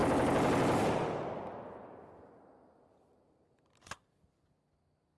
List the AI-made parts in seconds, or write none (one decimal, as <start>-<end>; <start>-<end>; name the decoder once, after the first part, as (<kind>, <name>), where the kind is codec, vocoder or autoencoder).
none